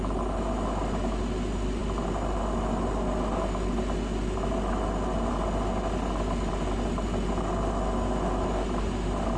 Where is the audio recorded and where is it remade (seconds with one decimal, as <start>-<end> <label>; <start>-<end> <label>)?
0.0-9.4 recorded